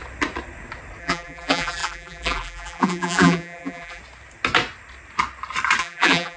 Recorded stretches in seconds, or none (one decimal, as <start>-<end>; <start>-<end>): 0.0-1.0; 4.0-5.8